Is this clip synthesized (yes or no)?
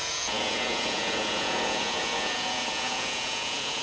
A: yes